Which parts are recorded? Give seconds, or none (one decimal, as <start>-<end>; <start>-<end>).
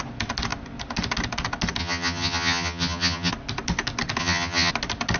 0.0-1.8; 3.3-4.2; 4.7-5.2